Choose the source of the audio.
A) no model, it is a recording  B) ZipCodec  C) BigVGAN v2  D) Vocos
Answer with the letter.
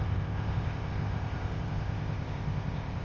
B